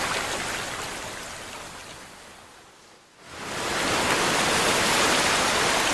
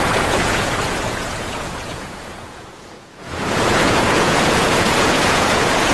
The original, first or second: first